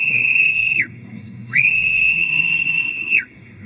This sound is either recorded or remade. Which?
remade